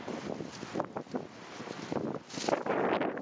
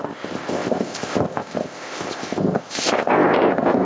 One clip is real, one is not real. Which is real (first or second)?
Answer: first